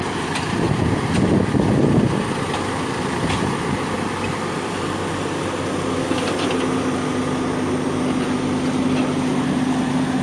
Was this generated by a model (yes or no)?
no